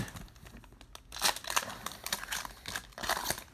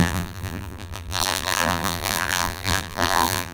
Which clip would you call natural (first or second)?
first